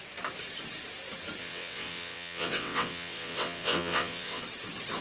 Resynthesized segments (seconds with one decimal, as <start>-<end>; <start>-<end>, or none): 1.4-4.4